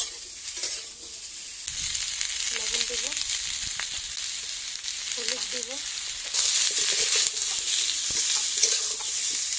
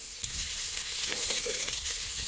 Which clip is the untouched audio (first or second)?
first